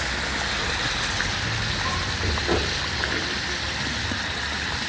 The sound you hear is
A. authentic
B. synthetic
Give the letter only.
A